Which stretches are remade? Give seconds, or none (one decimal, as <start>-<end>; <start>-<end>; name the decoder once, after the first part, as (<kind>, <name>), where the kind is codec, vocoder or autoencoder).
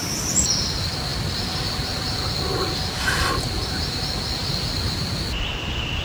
none